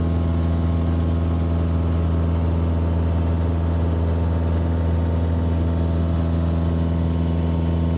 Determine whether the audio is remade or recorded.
recorded